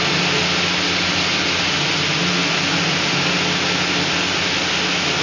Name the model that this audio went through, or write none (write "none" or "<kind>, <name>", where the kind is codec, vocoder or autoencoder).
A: none